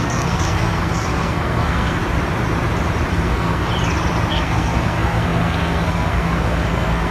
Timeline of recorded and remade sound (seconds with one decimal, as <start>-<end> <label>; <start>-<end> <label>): 0.0-2.0 remade; 2.0-3.1 recorded; 3.1-3.7 remade; 3.7-4.3 recorded; 4.3-7.1 remade